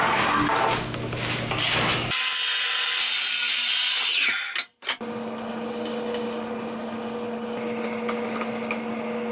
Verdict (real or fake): real